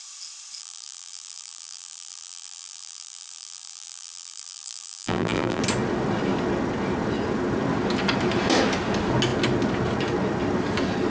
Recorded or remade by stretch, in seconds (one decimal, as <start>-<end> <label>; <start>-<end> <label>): 0.0-0.6 recorded; 0.6-5.6 remade; 5.6-11.1 recorded